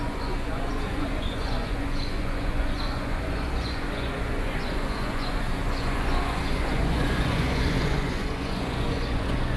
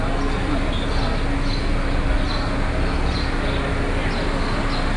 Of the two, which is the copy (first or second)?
first